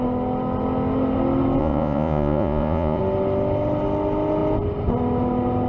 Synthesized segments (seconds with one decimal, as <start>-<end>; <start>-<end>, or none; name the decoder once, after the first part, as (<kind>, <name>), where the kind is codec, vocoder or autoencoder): 1.6-3.0 (vocoder, Vocos)